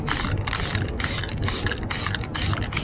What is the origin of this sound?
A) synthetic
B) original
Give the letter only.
B